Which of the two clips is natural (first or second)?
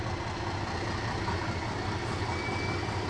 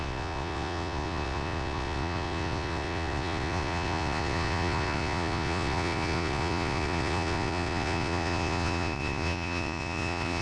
first